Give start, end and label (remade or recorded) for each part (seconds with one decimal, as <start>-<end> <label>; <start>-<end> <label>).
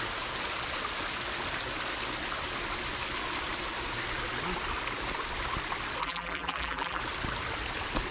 0.0-6.0 recorded; 6.0-7.0 remade; 7.0-8.1 recorded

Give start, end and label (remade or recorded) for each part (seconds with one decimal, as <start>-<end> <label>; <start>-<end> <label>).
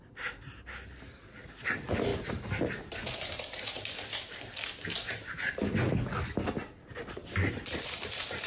0.0-8.5 recorded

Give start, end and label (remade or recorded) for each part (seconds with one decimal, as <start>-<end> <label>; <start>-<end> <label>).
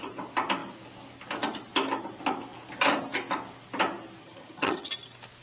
0.0-4.2 recorded; 4.2-4.9 remade; 4.9-5.4 recorded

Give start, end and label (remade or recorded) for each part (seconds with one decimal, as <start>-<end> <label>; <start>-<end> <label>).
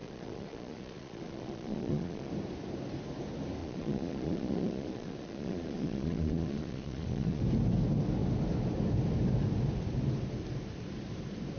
0.0-2.3 remade; 2.3-3.6 recorded; 3.6-7.4 remade; 7.4-11.6 recorded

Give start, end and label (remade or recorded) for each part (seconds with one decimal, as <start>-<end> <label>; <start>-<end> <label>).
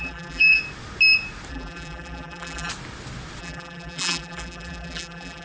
0.0-0.6 remade; 0.6-1.5 recorded; 1.5-2.7 remade; 2.7-3.4 recorded; 3.4-5.4 remade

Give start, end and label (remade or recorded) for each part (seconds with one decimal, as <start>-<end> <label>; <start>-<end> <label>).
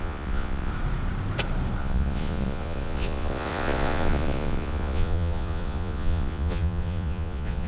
0.0-0.7 remade; 0.7-1.8 recorded; 1.8-7.7 remade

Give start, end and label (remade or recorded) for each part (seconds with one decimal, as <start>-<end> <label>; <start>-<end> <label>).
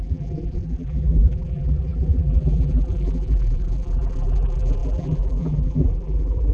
0.0-6.5 remade